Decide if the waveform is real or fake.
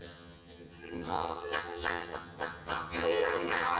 fake